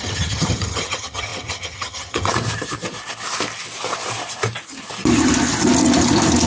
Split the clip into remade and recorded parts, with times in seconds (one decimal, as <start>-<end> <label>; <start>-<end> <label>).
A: 0.0-2.3 remade; 2.3-6.5 recorded